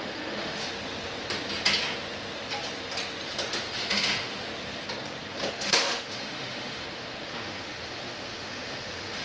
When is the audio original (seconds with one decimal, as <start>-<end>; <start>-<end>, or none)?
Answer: 0.7-3.5; 4.5-5.5